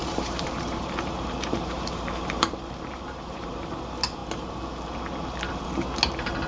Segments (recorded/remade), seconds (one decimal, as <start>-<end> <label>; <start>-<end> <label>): 0.0-3.7 remade; 3.7-6.5 recorded